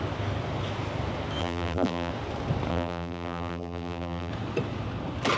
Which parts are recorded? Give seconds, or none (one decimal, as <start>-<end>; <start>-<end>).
0.0-1.4; 2.1-2.7; 4.3-5.4